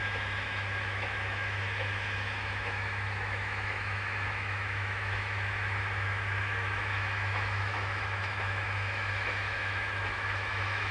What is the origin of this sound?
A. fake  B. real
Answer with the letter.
A